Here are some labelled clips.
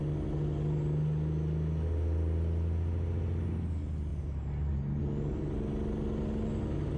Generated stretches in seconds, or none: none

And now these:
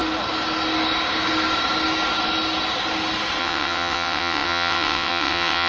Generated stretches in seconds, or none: 3.4-5.7

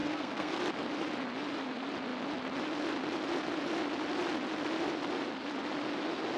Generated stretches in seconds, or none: 0.0-0.6